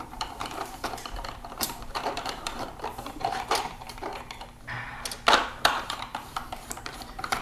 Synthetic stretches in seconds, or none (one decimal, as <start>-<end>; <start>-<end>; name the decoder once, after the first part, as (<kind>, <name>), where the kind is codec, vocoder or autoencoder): 0.0-4.1 (vocoder, BigVGAN v2); 5.6-7.4